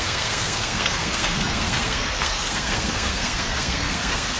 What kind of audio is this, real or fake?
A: fake